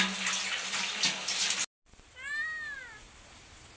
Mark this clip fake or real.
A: real